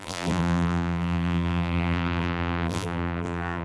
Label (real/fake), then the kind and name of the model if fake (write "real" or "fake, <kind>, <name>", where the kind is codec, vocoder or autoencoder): fake, vocoder, BigVGAN v2